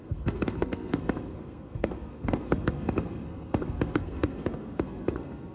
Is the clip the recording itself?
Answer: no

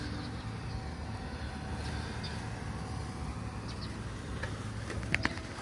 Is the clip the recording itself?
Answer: yes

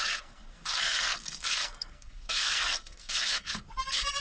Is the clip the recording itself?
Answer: no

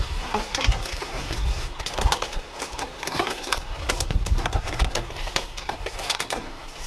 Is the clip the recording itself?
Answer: no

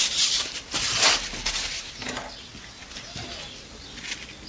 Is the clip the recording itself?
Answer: yes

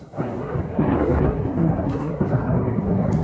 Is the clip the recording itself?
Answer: no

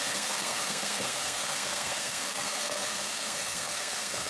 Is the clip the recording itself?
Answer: no